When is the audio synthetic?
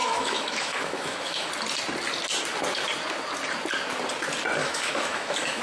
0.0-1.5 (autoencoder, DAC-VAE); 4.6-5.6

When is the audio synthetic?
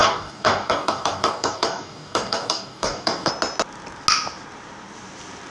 0.0-3.3 (codec, DAC)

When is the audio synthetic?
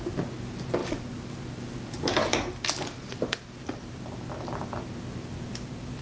none